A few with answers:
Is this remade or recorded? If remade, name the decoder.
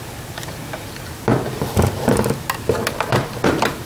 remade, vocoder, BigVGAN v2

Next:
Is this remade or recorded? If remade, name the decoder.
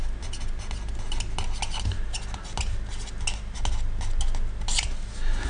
recorded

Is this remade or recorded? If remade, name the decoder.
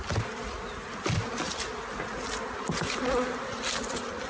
recorded